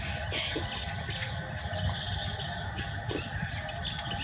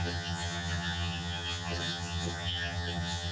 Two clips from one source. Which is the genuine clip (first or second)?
first